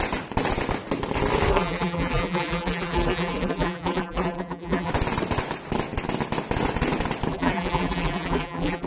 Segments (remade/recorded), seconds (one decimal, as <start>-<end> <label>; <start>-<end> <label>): 0.0-1.5 recorded; 1.5-4.9 remade; 4.9-7.3 recorded; 7.3-8.9 remade

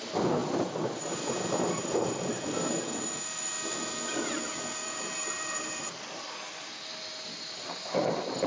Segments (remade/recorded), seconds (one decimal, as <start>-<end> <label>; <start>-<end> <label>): 0.0-0.4 recorded; 0.4-3.4 remade; 3.4-4.8 recorded; 4.8-6.2 remade; 6.2-7.1 recorded; 7.1-8.5 remade

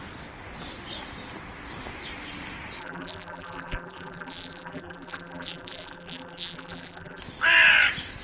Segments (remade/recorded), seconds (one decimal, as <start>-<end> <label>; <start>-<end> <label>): 0.0-2.8 recorded; 2.8-7.2 remade; 7.2-8.2 recorded

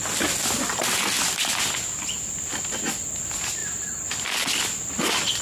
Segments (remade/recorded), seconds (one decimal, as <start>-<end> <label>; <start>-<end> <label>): 0.0-5.4 recorded

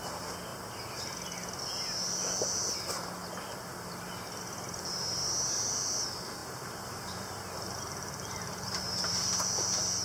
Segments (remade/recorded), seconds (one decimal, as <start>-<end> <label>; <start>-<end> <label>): 0.0-6.4 recorded; 6.4-9.3 remade; 9.3-10.0 recorded

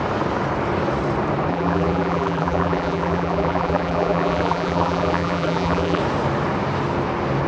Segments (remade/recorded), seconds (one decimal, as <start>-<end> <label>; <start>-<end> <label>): 0.0-1.5 recorded; 1.5-6.0 remade; 6.0-7.5 recorded